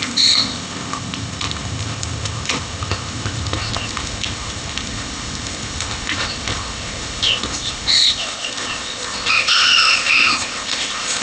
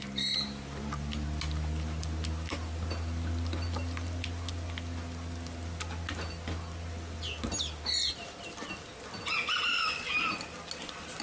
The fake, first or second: first